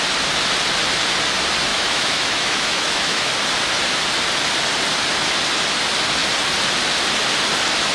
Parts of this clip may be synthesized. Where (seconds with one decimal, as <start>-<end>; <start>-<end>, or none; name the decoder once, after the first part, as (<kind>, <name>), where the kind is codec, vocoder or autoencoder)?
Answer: 1.7-3.3 (autoencoder, DAC-VAE)